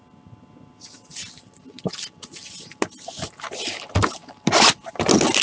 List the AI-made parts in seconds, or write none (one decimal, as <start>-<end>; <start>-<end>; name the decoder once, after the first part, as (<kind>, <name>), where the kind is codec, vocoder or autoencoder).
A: none